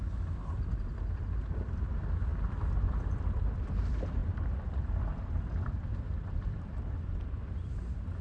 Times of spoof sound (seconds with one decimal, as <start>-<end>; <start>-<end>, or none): 4.2-4.9; 5.9-6.8